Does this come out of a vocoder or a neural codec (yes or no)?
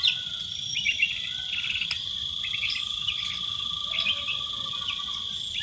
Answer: no